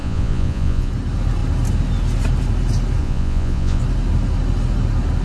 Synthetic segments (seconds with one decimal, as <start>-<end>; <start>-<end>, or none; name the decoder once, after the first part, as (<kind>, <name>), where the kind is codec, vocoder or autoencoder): 0.0-0.9 (vocoder, Vocos); 3.0-3.8